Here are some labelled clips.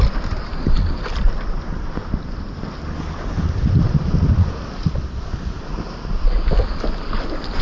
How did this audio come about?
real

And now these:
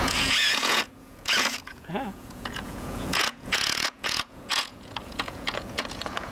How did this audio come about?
fake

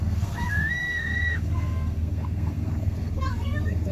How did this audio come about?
fake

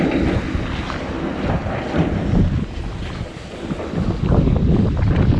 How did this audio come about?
real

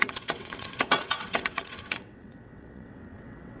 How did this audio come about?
fake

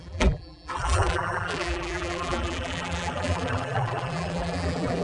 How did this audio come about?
fake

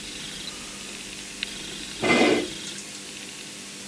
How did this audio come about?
real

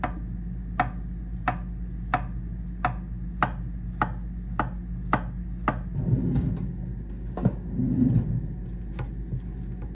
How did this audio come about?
real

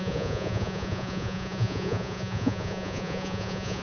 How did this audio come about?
fake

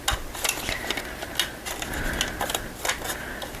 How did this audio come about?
real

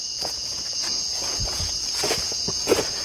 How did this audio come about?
fake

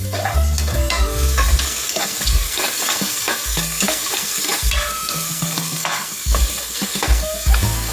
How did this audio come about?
fake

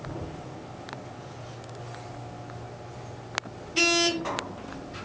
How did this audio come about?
real